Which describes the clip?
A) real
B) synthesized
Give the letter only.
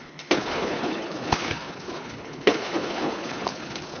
B